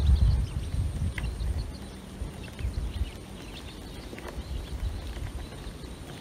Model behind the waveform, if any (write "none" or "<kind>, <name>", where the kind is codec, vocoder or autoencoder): none